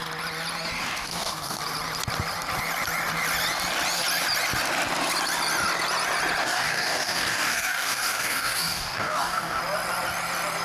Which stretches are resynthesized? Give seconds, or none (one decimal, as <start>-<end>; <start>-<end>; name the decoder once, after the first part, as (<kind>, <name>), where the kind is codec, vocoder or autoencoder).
0.8-1.6 (codec, DAC); 6.4-9.6